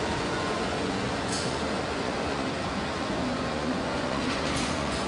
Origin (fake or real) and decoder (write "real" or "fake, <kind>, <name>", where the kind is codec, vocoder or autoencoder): fake, vocoder, Vocos